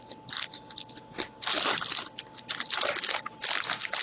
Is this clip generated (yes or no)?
no